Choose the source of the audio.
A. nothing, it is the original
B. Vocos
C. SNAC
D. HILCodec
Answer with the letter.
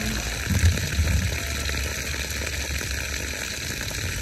A